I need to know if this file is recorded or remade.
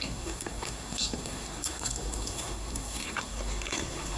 remade